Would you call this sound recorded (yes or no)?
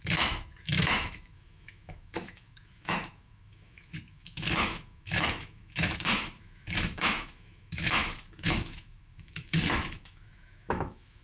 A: no